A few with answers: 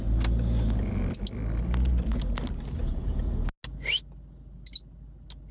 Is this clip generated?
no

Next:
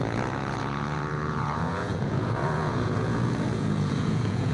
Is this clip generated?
yes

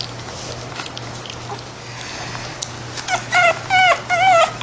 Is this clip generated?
no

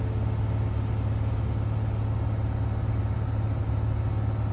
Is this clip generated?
no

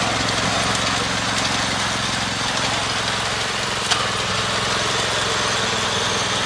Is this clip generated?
no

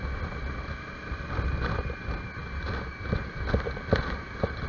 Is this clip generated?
no